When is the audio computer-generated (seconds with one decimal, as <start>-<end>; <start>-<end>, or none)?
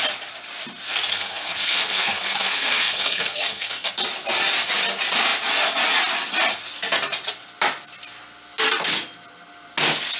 1.1-3.9